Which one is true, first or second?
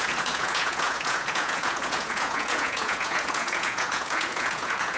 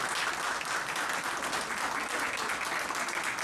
second